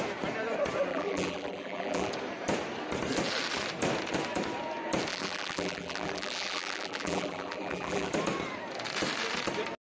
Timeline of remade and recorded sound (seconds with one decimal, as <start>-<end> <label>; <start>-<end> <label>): 0.0-0.9 recorded; 0.9-2.1 remade; 2.1-5.1 recorded; 5.1-8.1 remade; 8.1-9.8 recorded